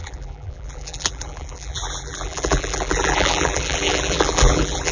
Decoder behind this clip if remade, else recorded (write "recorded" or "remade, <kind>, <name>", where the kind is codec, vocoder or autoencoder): remade, vocoder, BigVGAN v2